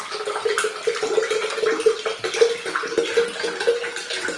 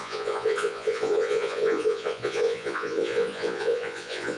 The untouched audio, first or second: first